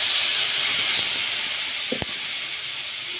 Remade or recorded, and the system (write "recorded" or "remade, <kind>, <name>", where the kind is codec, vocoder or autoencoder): recorded